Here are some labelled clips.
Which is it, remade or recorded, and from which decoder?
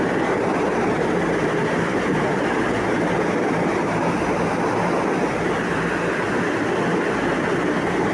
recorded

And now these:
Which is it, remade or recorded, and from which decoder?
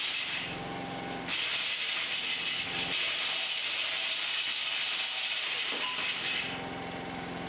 recorded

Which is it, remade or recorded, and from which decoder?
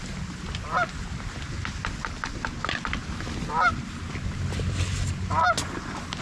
recorded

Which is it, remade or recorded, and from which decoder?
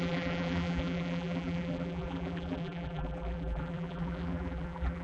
remade, vocoder, BigVGAN v2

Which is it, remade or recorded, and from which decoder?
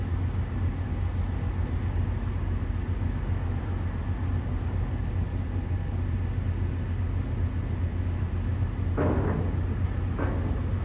recorded